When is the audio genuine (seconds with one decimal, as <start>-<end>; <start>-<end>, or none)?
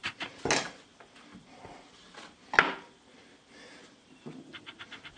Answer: 0.0-5.2